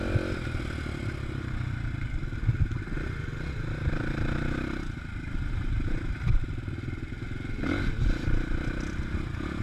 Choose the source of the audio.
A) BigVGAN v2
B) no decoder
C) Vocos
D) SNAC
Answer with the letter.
B